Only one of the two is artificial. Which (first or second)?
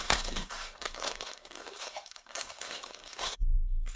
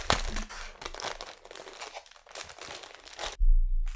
first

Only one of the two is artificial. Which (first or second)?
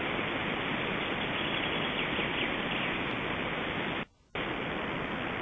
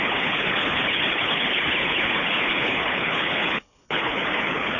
second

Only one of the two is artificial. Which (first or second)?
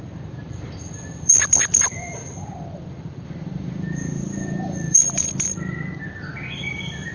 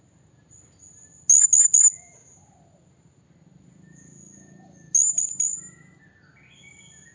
first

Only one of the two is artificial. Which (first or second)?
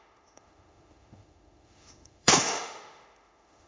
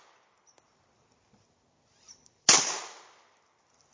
first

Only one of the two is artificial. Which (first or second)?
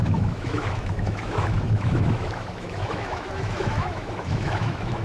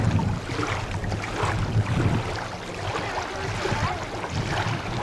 first